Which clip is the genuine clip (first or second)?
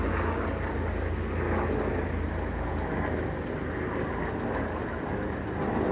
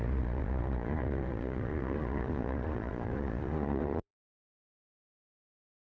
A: first